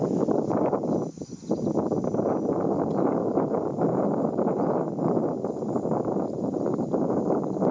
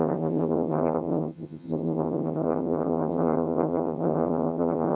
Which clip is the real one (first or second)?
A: first